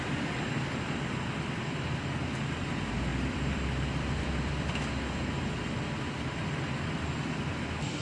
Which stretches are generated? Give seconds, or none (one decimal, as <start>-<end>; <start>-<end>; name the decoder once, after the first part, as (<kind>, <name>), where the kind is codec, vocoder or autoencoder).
3.1-4.8 (vocoder, BigVGAN v2)